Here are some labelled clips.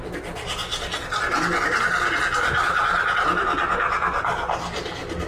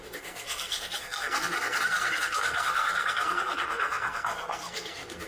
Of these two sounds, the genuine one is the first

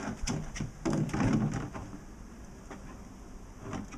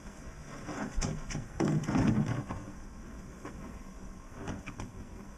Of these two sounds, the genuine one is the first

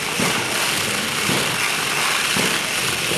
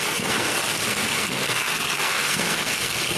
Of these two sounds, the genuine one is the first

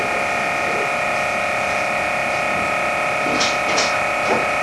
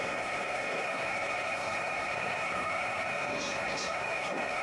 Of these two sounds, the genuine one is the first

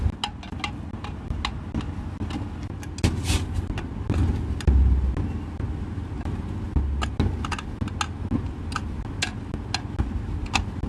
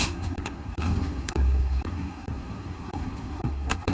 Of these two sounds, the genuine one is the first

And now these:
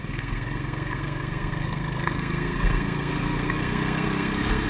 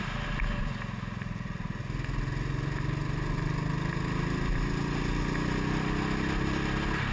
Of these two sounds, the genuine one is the second